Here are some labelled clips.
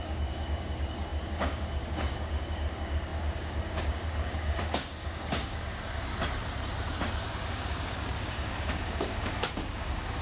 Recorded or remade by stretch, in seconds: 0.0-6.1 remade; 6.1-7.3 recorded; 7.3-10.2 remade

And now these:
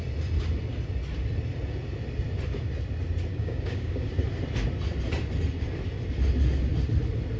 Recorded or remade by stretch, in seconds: 0.0-3.3 recorded; 3.3-4.1 remade; 4.1-7.4 recorded

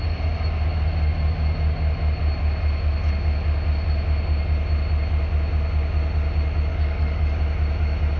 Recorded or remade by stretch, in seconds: 0.0-6.7 recorded; 6.7-7.4 remade; 7.4-8.2 recorded

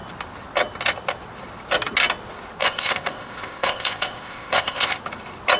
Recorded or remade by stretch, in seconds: 0.0-2.6 recorded; 2.6-5.0 remade; 5.0-5.6 recorded

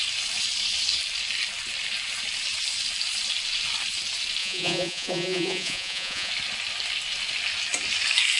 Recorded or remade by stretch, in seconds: 0.0-4.4 recorded; 4.4-6.3 remade; 6.3-8.4 recorded

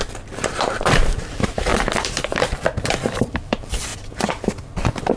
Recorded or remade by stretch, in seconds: 0.0-3.9 remade; 3.9-4.6 recorded; 4.6-5.2 remade

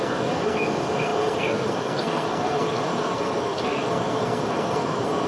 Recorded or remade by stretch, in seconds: 0.0-5.3 remade

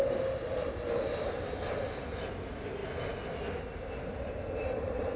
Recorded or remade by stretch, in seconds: 0.0-2.8 remade; 2.8-4.0 recorded; 4.0-5.2 remade